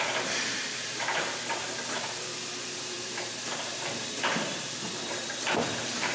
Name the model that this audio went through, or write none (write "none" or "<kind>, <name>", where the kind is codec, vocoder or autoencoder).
vocoder, BigVGAN v2